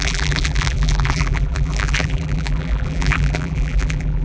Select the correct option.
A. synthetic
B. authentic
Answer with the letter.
A